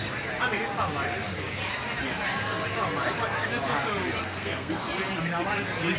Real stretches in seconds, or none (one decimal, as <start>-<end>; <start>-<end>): 0.0-4.2; 4.8-6.0